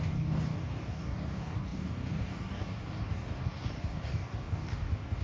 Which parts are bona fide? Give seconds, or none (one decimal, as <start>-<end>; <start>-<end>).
none